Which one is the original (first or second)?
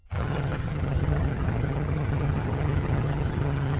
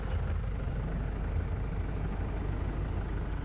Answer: second